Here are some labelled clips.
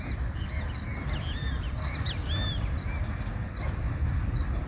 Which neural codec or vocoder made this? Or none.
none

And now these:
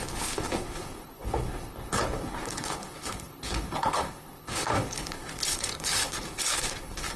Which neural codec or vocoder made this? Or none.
codec, HILCodec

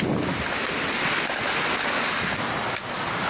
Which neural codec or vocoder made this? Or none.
none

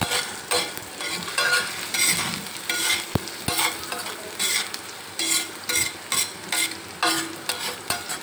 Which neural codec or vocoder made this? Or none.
none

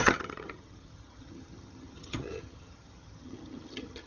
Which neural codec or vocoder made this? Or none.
vocoder, HiFi-GAN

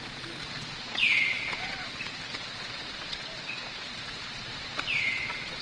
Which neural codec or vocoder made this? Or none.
vocoder, Vocos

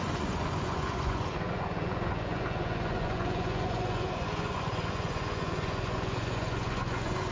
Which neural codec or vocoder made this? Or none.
vocoder, Vocos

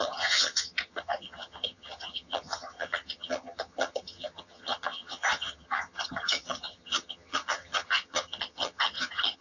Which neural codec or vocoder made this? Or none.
vocoder, HiFi-GAN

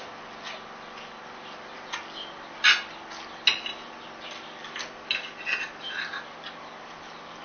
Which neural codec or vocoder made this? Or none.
none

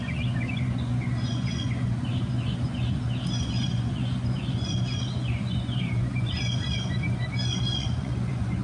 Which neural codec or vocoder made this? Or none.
vocoder, Vocos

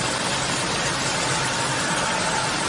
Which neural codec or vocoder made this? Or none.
none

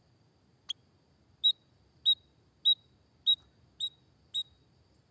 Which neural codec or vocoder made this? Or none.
none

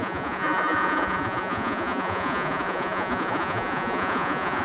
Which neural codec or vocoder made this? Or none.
vocoder, Vocos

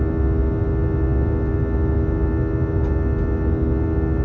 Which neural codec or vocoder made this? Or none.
none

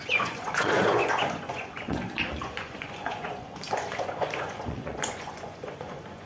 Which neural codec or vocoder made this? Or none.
vocoder, Vocos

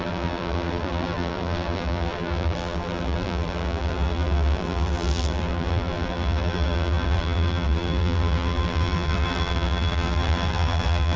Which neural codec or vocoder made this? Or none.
vocoder, BigVGAN v2